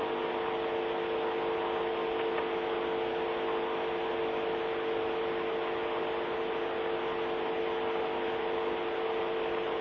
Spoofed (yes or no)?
no